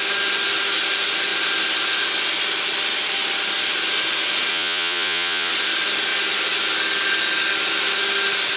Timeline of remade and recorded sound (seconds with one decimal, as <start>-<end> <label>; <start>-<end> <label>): 0.0-4.5 recorded; 4.5-5.5 remade; 5.5-8.6 recorded